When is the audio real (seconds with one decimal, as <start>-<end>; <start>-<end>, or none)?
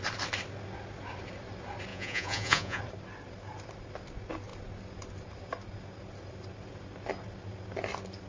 0.0-1.9; 2.8-8.3